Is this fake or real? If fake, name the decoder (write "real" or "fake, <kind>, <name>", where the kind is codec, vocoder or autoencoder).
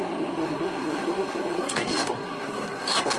fake, codec, SNAC